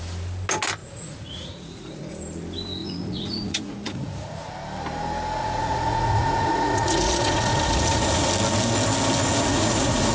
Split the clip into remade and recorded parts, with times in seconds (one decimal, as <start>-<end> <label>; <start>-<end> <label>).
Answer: 0.0-0.8 recorded; 0.8-2.1 remade; 2.1-2.8 recorded; 2.8-4.5 remade; 4.5-5.4 recorded; 5.4-8.3 remade; 8.3-9.2 recorded; 9.2-10.1 remade